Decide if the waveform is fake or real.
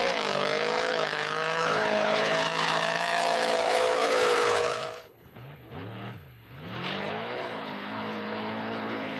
fake